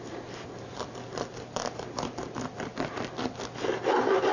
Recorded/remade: recorded